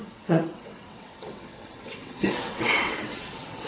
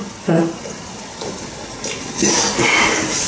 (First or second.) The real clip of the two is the second